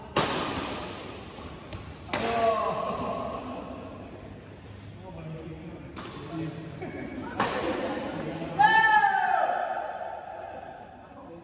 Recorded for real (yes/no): yes